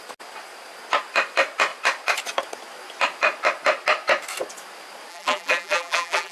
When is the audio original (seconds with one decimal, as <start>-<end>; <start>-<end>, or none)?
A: 0.0-5.1